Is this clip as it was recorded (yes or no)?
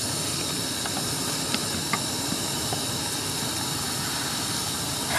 yes